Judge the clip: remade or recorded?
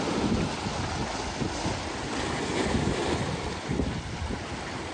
recorded